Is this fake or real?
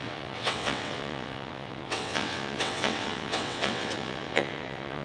fake